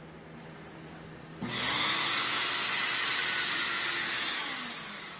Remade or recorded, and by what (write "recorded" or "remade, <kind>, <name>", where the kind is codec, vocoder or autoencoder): recorded